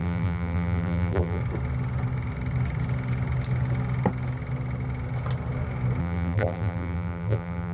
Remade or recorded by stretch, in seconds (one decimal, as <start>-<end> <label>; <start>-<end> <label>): 0.0-1.4 remade; 1.4-6.0 recorded; 6.0-7.7 remade